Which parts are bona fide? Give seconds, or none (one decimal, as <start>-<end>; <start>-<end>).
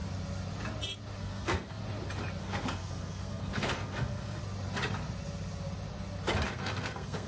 0.0-1.2; 1.8-2.4; 4.4-6.5